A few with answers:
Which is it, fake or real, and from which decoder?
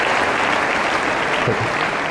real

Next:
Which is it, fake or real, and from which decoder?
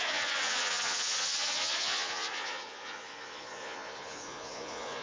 fake, vocoder, Vocos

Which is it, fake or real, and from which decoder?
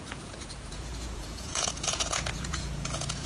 fake, vocoder, Vocos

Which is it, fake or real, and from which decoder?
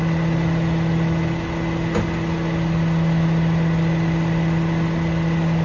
real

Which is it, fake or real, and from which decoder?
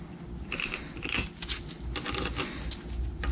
real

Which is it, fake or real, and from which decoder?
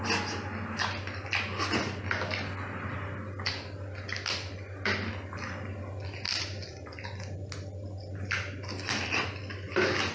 real